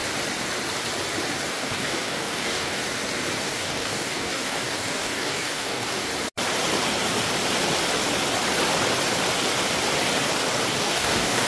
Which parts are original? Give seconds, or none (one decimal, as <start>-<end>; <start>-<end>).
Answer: 0.0-1.5; 2.8-3.4; 6.1-10.8